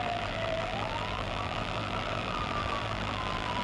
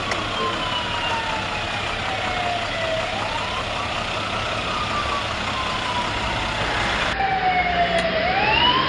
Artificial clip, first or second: first